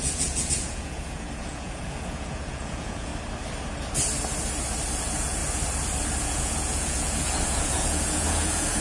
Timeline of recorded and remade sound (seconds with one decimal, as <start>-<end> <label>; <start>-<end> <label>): 0.0-3.1 remade; 3.1-4.9 recorded; 4.9-5.4 remade; 5.4-6.2 recorded; 6.2-8.8 remade